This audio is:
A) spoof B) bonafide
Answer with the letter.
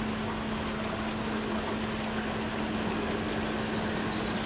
B